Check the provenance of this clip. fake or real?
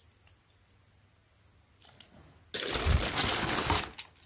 real